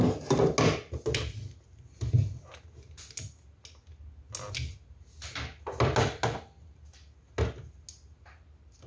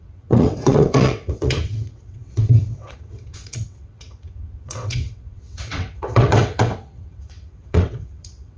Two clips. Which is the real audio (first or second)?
first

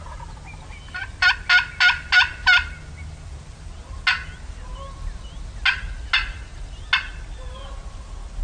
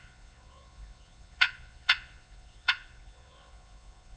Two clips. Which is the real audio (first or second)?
first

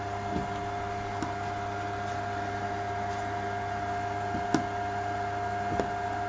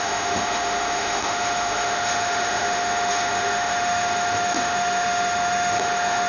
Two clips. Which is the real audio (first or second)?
first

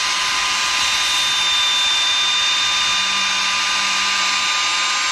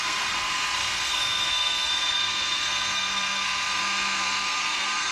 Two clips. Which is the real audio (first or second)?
first